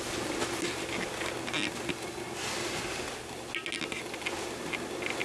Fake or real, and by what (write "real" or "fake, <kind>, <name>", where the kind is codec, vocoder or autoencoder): real